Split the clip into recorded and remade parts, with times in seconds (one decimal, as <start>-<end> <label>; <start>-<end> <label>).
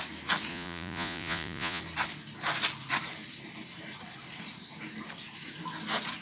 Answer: 0.0-0.5 recorded; 0.5-1.8 remade; 1.8-6.2 recorded